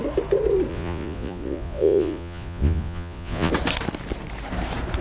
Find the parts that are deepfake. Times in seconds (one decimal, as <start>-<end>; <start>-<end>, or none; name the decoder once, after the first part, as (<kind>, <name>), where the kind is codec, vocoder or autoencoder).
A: 0.7-3.5 (vocoder, Vocos)